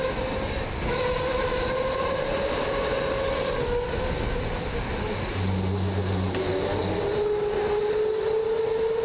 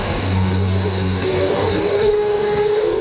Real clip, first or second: first